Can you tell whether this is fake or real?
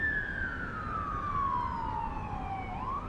real